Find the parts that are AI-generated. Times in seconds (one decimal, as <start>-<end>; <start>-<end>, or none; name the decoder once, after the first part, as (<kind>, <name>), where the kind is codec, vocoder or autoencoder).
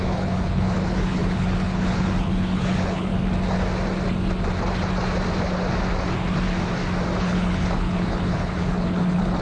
0.0-3.1 (codec, HILCodec); 7.2-9.4